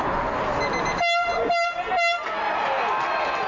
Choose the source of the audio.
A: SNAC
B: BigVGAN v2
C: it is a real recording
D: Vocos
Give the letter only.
C